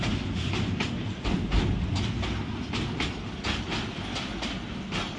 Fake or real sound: real